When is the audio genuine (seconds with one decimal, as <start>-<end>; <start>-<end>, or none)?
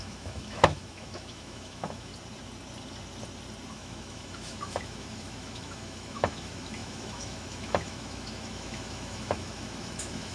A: 2.1-3.7